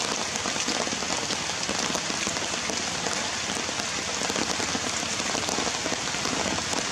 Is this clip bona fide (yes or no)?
yes